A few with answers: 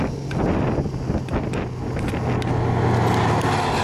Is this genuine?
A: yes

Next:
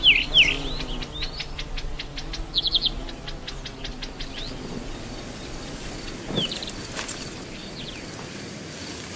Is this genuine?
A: yes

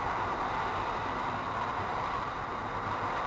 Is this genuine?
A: yes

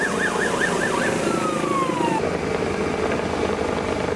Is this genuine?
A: yes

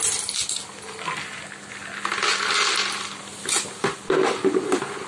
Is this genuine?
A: yes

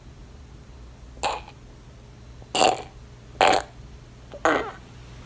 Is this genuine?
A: yes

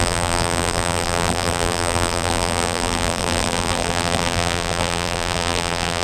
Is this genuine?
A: no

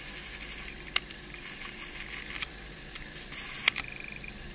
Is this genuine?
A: no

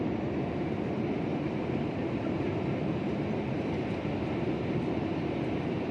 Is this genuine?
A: no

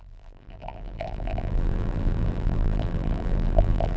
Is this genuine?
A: no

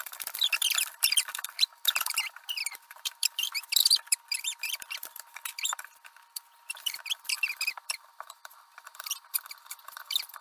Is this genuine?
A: no